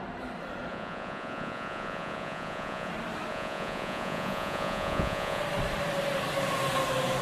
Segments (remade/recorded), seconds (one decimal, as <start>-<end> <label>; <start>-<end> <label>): 0.0-0.7 recorded; 0.7-2.9 remade; 2.9-3.3 recorded; 3.3-5.4 remade; 5.4-7.2 recorded